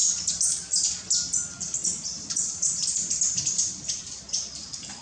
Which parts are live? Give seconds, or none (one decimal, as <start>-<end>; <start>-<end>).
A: 0.0-1.8; 3.1-5.0